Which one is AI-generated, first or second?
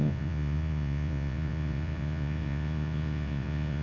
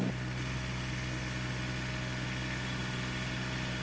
first